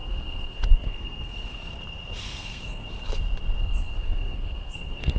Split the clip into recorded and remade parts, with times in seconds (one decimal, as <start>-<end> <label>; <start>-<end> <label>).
0.0-1.7 remade; 1.7-2.2 recorded; 2.2-2.8 remade; 2.8-3.6 recorded; 3.6-5.2 remade